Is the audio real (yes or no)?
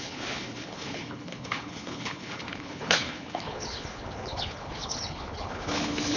no